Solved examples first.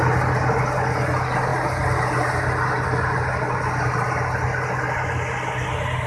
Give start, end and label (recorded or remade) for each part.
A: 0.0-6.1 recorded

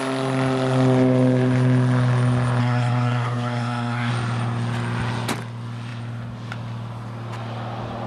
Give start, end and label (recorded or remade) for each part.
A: 0.0-2.6 recorded; 2.6-4.1 remade; 4.1-8.1 recorded

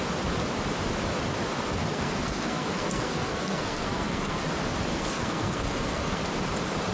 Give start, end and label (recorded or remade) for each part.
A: 0.0-1.8 recorded; 1.8-4.4 remade; 4.4-4.9 recorded; 4.9-6.2 remade; 6.2-6.9 recorded

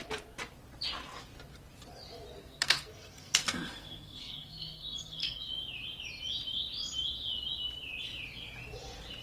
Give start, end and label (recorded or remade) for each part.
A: 0.0-2.4 recorded; 2.4-5.5 remade; 5.5-9.2 recorded